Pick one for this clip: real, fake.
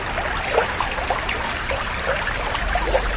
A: real